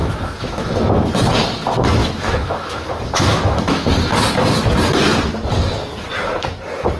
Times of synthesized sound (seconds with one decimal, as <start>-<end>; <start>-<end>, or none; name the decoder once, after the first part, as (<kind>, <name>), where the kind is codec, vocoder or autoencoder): 0.0-1.1 (autoencoder, DAC-VAE); 2.0-3.9